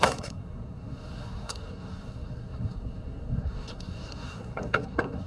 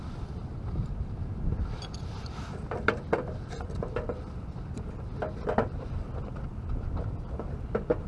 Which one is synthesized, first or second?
first